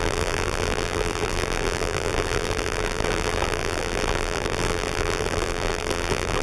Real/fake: fake